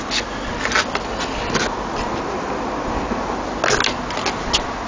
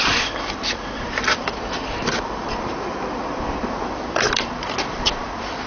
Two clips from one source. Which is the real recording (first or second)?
first